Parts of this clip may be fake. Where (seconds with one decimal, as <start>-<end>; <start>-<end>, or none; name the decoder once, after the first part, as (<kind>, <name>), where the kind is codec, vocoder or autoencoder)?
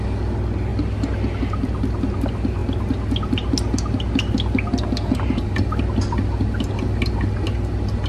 none